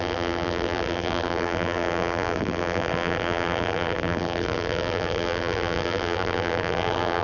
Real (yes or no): no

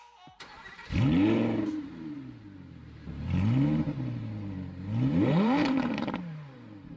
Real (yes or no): no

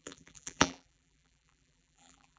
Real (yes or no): no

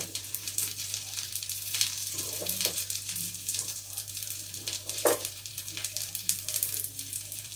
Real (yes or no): no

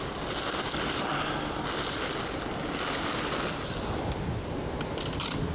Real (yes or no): yes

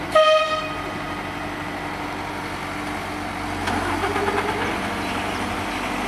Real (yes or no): yes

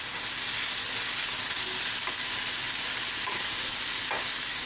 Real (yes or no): yes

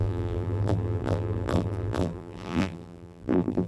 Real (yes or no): no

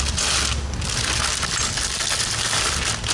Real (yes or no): no